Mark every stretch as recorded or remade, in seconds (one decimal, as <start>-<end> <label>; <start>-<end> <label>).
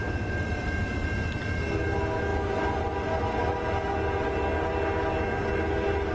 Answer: 0.0-6.1 recorded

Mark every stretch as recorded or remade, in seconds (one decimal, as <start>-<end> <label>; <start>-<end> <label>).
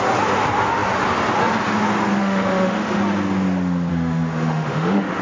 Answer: 0.0-2.2 recorded; 2.2-3.0 remade; 3.0-3.9 recorded; 3.9-5.2 remade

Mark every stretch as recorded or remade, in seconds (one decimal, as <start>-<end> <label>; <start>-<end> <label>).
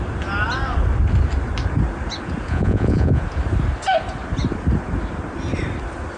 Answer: 0.0-2.5 recorded; 2.5-3.2 remade; 3.2-6.2 recorded